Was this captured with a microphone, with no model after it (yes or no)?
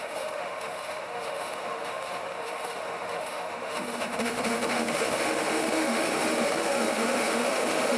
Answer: no